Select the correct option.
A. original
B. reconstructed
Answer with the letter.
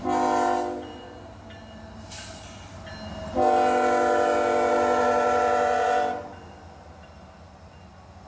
A